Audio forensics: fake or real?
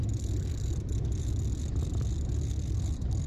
fake